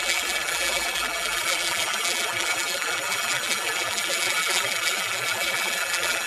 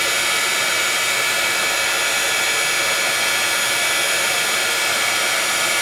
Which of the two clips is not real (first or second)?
first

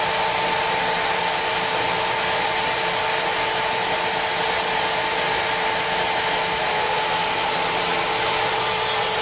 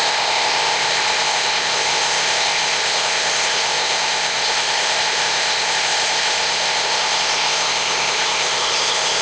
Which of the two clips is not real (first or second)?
second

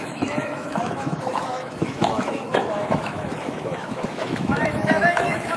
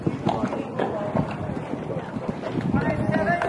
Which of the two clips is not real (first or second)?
first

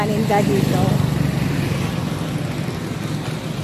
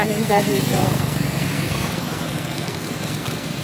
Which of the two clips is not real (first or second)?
second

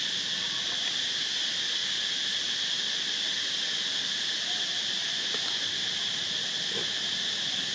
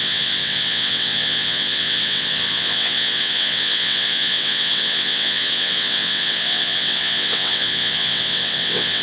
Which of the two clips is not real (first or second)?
second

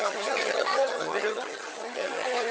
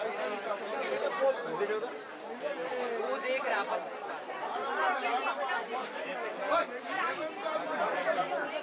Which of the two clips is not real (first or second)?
first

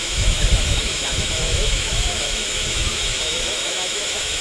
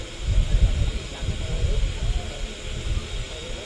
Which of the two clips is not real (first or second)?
first